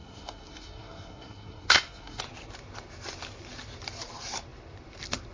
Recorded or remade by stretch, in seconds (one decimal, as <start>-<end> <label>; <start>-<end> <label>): 0.0-2.2 remade; 2.2-5.3 recorded